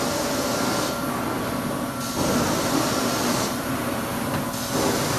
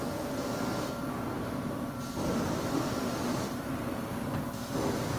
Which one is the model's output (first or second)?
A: second